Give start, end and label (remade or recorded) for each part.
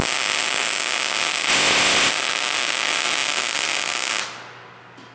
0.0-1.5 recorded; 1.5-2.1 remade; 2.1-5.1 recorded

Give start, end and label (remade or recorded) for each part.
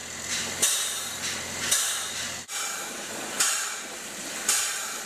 0.0-3.1 remade; 3.1-5.1 recorded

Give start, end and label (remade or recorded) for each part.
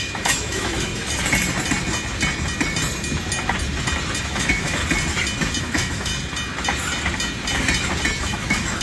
0.0-0.9 remade; 0.9-4.2 recorded; 4.2-4.8 remade; 4.8-5.6 recorded; 5.6-6.1 remade; 6.1-8.2 recorded; 8.2-8.8 remade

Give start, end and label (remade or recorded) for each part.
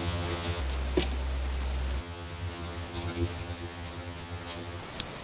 0.0-0.6 remade; 0.6-2.0 recorded; 2.0-4.8 remade; 4.8-5.2 recorded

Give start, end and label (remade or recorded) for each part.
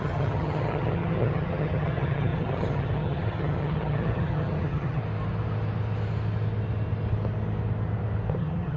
0.0-5.0 remade; 5.0-8.3 recorded; 8.3-8.8 remade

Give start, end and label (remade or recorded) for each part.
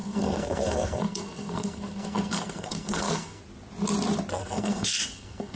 0.0-3.4 remade; 3.4-4.4 recorded; 4.4-5.6 remade